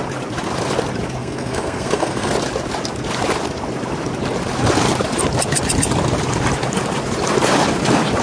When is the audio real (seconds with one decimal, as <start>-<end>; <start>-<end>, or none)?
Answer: 0.0-1.2; 2.3-8.2